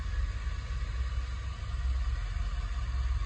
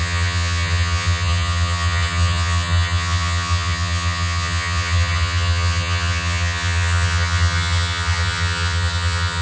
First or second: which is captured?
first